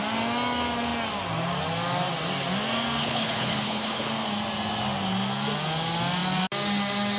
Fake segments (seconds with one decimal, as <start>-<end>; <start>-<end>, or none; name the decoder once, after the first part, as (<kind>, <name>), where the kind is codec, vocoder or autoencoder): 3.0-4.1 (codec, HILCodec)